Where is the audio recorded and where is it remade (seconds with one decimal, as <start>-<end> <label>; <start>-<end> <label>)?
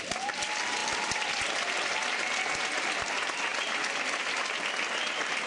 0.0-5.5 recorded